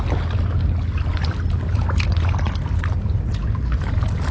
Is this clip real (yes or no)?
yes